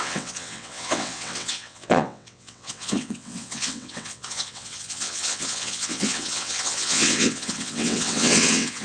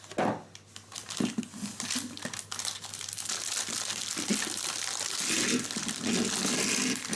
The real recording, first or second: second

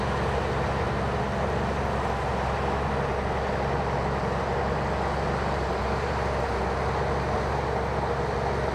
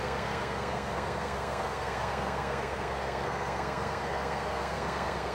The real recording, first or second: first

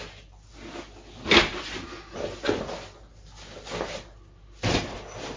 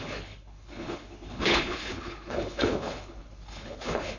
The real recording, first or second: first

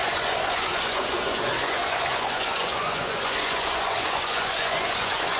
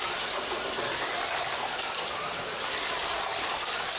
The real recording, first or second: second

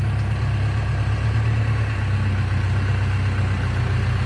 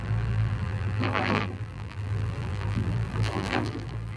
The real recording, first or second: first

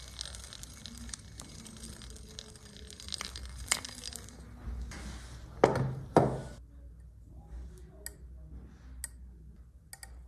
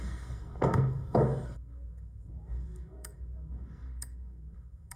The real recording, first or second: first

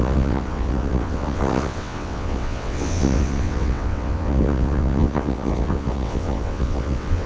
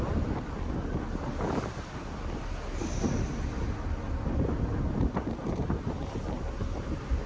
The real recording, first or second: second